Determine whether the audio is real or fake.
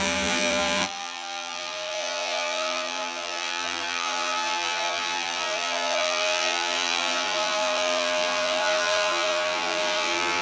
fake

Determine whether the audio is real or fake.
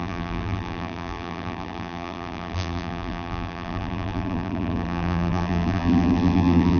fake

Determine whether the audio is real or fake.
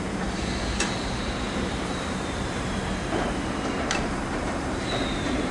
fake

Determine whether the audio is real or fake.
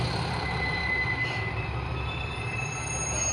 fake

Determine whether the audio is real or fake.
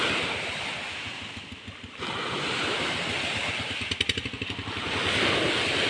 real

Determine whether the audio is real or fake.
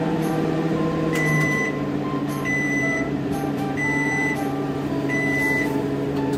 fake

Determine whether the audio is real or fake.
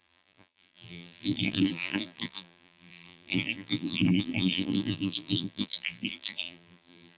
fake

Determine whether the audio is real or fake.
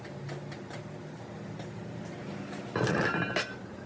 real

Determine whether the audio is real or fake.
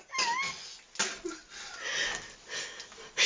real